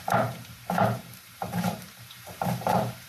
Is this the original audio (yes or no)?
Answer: no